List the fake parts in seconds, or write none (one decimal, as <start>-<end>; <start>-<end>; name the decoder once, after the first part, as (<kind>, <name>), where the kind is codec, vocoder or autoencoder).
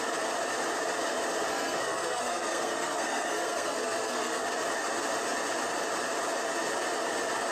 1.5-4.4 (codec, SNAC)